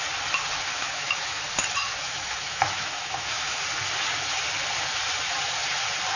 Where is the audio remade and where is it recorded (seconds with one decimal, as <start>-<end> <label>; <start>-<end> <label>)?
0.0-0.7 recorded; 0.7-1.4 remade; 1.4-1.9 recorded; 1.9-3.6 remade; 3.6-6.2 recorded